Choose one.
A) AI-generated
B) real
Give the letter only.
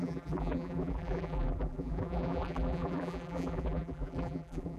A